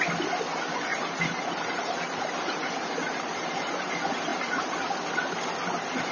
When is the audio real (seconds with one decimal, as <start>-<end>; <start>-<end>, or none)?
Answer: 0.0-0.9; 3.9-6.1